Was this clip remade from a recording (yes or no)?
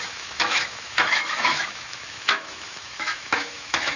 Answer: yes